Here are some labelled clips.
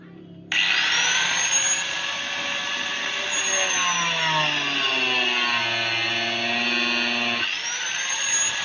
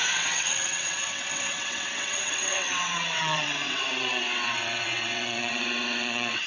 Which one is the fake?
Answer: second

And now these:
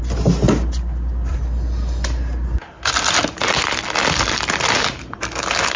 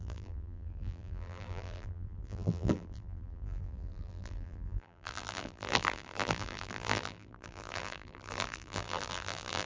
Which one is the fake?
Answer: second